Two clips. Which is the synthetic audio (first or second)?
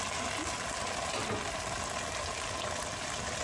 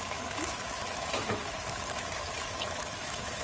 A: second